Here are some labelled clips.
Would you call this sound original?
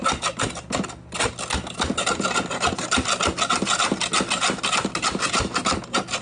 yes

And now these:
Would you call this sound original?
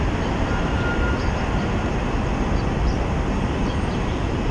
yes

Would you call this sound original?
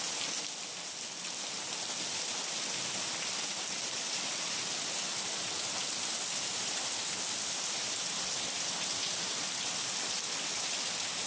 yes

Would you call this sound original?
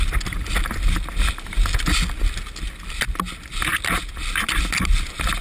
yes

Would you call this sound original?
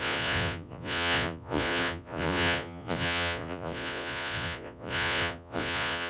no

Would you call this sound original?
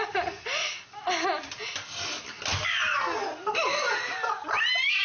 yes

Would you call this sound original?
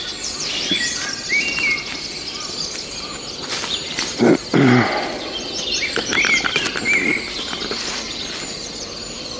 yes